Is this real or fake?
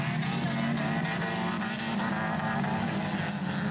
real